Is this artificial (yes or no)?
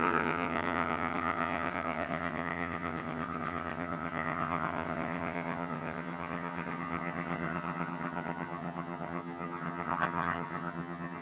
yes